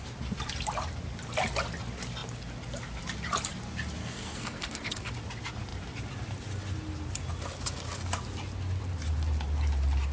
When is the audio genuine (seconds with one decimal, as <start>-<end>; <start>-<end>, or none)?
0.0-4.0; 5.1-10.1